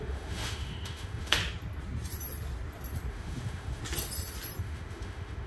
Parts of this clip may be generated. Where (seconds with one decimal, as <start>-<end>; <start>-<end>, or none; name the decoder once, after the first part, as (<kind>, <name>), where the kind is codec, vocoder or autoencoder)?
0.0-1.4 (autoencoder, DAC-VAE); 3.1-3.8; 4.6-5.5